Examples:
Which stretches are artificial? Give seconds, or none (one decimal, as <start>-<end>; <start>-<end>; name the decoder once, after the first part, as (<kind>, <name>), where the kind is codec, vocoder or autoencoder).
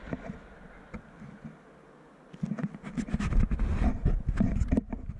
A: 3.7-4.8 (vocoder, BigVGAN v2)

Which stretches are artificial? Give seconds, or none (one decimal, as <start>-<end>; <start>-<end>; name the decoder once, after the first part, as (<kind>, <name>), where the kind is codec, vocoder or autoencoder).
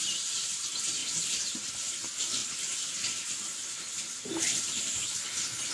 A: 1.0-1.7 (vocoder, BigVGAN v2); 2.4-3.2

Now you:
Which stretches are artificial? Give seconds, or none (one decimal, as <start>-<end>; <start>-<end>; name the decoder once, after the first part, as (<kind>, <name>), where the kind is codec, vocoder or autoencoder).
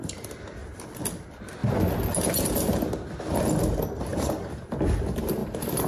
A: 0.0-1.6 (vocoder, BigVGAN v2); 3.2-5.4